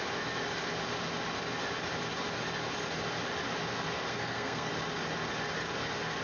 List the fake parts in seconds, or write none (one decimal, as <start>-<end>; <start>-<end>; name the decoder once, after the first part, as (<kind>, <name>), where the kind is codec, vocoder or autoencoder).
4.1-4.7 (codec, SNAC)